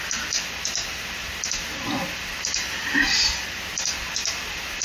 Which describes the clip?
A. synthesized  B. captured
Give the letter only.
B